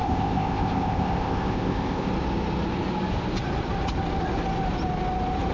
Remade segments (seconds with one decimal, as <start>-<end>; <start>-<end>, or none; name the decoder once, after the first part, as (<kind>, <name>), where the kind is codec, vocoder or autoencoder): 0.0-2.1 (codec, ZipCodec)